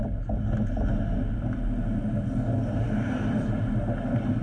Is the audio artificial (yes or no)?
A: no